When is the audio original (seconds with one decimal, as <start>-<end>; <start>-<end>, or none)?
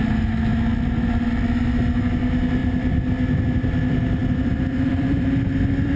0.0-2.6; 3.1-4.2